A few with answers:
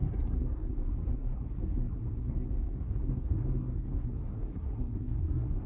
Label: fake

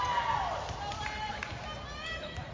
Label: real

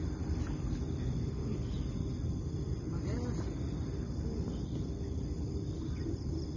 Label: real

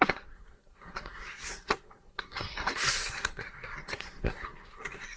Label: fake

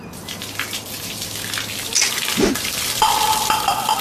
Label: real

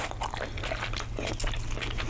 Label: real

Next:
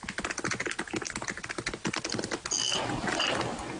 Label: real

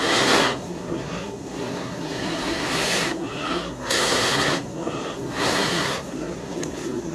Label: fake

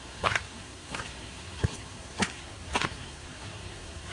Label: fake